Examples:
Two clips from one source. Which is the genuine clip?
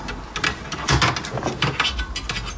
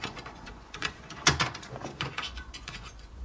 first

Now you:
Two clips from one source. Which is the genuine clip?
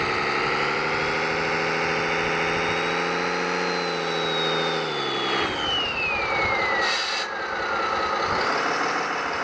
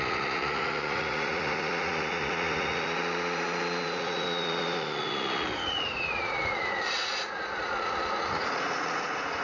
first